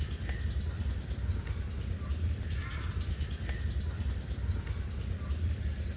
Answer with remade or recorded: recorded